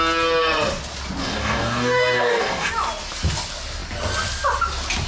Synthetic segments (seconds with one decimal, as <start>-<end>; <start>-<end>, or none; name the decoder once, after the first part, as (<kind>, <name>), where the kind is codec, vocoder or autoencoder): 1.2-2.7 (codec, DAC)